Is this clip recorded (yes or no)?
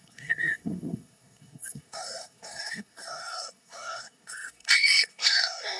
no